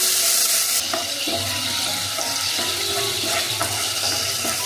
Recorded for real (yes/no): yes